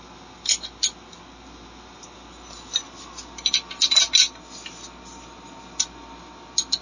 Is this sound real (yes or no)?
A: yes